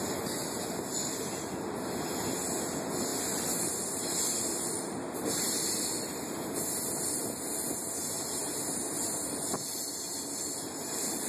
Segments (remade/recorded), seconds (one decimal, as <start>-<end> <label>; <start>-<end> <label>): 0.0-8.0 recorded; 8.0-9.3 remade; 9.3-11.3 recorded